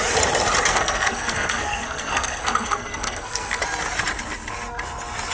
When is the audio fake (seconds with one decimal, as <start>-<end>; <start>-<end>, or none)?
0.7-3.6